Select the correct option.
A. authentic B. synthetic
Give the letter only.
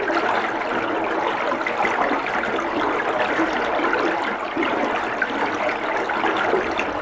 A